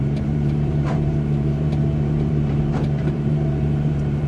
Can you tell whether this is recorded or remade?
remade